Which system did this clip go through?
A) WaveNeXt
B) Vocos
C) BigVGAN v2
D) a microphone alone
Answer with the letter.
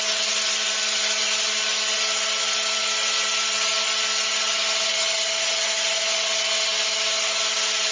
D